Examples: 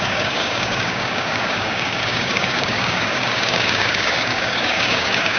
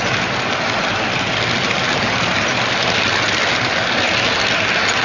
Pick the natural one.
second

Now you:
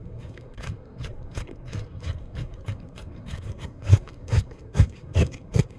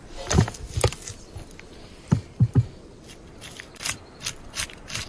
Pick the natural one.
second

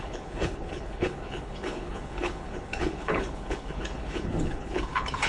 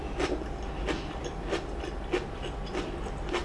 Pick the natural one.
second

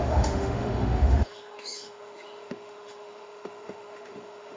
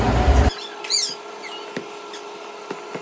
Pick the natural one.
second